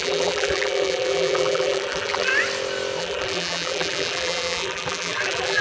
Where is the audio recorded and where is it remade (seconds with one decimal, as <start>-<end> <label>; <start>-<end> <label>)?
0.0-2.3 remade; 2.3-3.0 recorded; 3.0-5.6 remade